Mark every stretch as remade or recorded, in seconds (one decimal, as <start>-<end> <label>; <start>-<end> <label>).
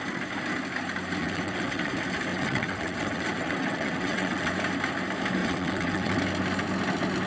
0.0-1.2 recorded; 1.2-1.9 remade; 1.9-2.3 recorded; 2.3-4.5 remade; 4.5-5.4 recorded; 5.4-6.2 remade; 6.2-7.3 recorded